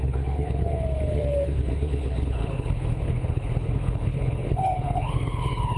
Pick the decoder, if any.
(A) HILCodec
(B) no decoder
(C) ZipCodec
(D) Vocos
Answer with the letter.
A